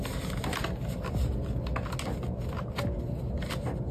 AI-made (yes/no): no